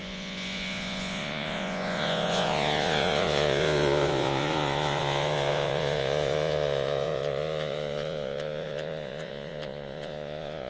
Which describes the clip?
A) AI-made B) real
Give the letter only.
A